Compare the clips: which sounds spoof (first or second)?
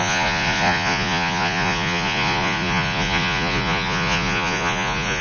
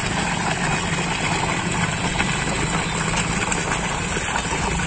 first